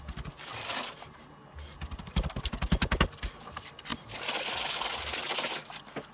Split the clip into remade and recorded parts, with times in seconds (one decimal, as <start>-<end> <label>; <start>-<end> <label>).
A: 0.0-6.1 recorded